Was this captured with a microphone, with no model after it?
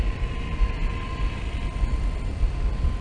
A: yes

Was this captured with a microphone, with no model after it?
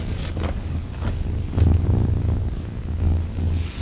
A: no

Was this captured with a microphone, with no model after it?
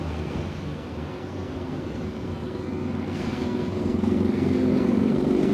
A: no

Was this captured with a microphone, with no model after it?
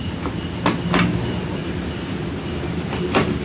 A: yes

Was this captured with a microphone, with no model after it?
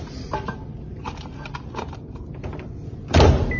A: no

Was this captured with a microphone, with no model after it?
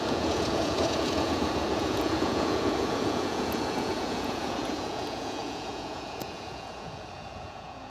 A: no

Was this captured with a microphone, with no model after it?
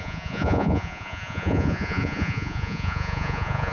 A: no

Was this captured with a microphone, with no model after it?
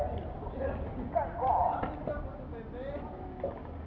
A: no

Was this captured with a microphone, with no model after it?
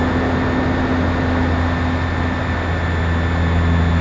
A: yes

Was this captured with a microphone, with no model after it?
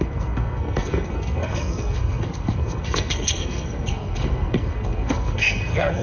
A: no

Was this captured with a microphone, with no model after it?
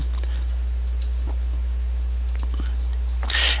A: yes